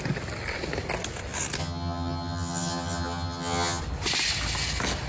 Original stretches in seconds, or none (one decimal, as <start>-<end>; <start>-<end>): 0.0-1.6; 3.8-5.1